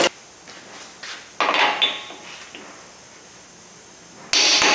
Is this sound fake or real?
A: real